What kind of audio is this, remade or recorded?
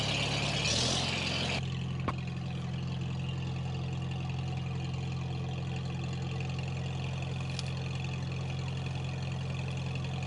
recorded